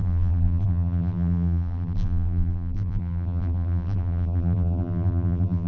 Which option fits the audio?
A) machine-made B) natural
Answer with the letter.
A